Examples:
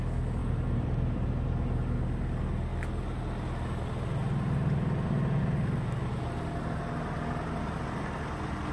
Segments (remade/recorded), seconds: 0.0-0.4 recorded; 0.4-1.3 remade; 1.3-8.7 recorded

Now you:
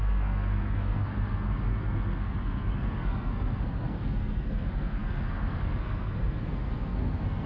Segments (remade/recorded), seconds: 0.0-7.5 remade

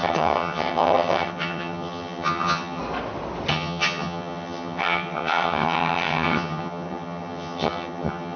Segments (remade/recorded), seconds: 0.0-2.8 remade; 2.8-3.5 recorded; 3.5-8.4 remade

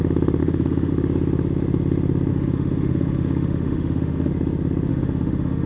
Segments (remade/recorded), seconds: 0.0-0.4 recorded; 0.4-0.9 remade; 0.9-2.3 recorded; 2.3-4.3 remade; 4.3-4.9 recorded; 4.9-5.7 remade

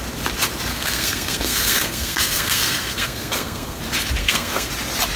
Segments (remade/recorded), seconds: 0.0-0.7 recorded; 0.7-3.8 remade; 3.8-4.2 recorded; 4.2-4.7 remade; 4.7-5.2 recorded